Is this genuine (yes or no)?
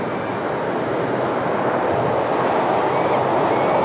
yes